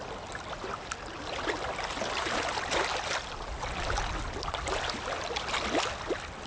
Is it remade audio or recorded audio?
recorded